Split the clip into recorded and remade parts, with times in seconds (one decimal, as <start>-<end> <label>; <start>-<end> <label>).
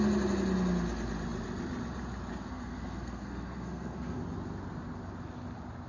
0.0-2.3 recorded; 2.3-4.2 remade; 4.2-5.9 recorded